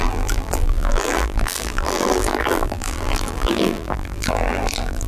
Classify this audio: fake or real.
fake